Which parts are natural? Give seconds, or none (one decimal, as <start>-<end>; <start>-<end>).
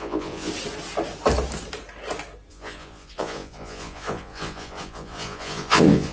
0.5-2.5